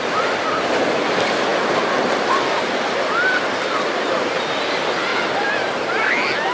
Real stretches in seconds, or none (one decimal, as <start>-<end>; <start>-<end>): 0.0-6.5